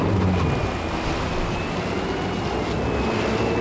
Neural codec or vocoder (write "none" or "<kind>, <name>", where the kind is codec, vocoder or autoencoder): none